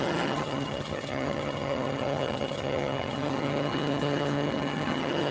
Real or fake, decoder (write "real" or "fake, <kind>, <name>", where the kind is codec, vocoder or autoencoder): fake, vocoder, HiFi-GAN